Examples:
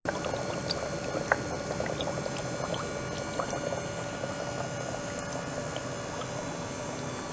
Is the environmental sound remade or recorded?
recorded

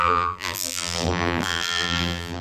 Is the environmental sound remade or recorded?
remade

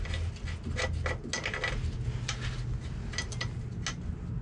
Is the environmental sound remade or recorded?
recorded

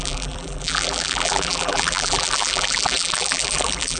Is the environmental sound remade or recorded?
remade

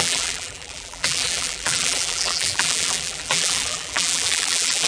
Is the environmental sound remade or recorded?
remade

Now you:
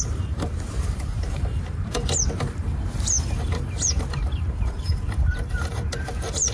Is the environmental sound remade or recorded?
remade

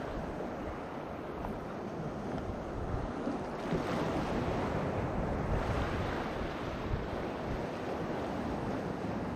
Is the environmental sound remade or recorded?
recorded